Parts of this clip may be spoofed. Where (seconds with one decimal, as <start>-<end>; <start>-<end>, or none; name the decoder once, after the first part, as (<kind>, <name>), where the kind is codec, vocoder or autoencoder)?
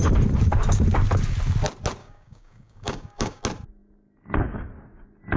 2.0-3.4 (codec, DAC)